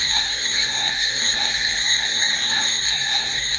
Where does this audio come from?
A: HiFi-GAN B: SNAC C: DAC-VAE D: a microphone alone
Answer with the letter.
B